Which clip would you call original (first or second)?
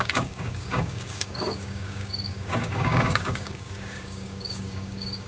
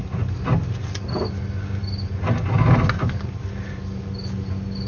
second